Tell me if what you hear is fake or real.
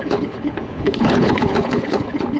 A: fake